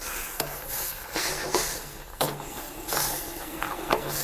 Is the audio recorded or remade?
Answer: remade